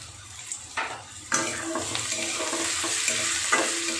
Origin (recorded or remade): recorded